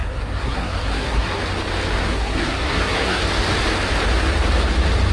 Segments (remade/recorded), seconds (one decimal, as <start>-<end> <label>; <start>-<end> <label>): 0.0-1.4 remade; 1.4-2.1 recorded; 2.1-3.2 remade; 3.2-5.1 recorded